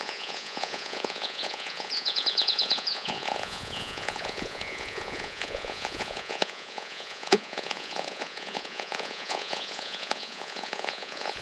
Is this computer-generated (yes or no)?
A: yes